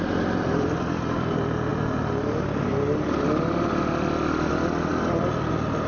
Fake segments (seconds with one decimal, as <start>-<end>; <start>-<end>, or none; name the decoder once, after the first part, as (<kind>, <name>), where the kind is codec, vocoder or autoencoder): 0.0-1.7 (vocoder, BigVGAN v2); 4.5-5.9